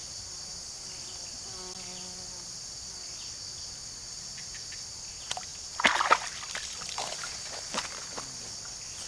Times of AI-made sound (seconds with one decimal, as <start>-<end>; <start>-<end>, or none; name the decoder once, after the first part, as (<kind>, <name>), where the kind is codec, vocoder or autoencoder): none